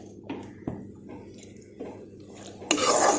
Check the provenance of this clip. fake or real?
real